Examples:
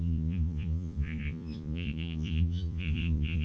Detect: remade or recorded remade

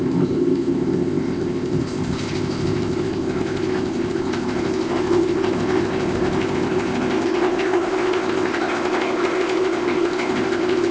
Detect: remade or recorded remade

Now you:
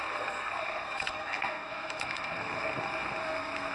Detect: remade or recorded remade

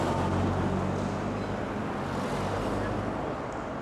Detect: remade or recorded recorded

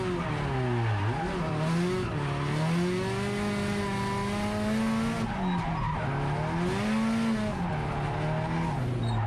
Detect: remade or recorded recorded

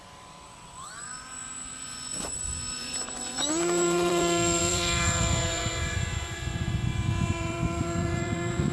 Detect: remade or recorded remade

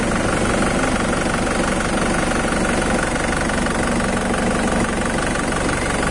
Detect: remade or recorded recorded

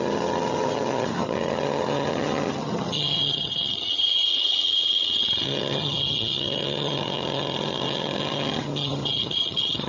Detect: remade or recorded remade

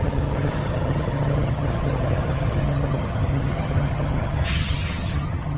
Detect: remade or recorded remade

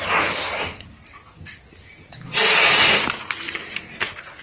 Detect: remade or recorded recorded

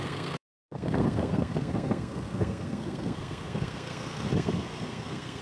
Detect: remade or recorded remade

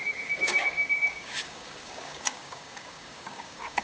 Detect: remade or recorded remade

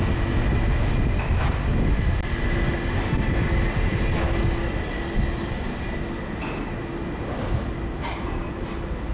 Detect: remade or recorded recorded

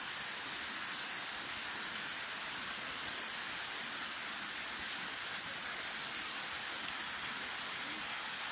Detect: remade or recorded recorded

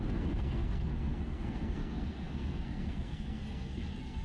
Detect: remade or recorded remade